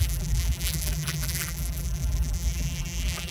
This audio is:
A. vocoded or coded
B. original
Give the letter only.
A